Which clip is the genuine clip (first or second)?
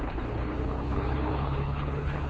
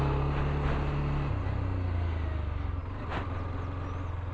second